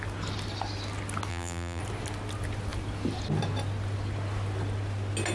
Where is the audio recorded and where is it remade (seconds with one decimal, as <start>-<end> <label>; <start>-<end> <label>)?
0.0-1.3 recorded; 1.3-1.8 remade; 1.8-5.3 recorded